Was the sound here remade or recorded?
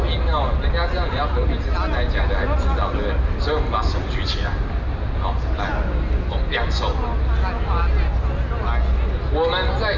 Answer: recorded